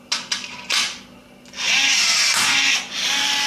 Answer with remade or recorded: recorded